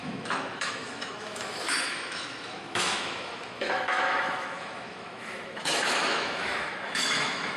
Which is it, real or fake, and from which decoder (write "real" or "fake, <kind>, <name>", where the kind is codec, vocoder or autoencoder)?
fake, autoencoder, DAC-VAE